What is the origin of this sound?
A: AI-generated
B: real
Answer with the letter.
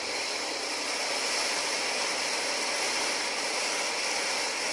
B